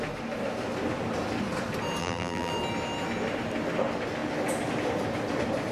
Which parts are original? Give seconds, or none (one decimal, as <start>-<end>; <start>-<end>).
0.0-2.0; 2.5-5.7